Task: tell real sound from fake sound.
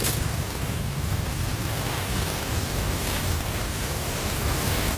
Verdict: fake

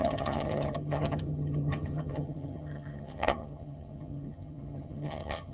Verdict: fake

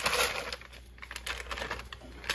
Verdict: real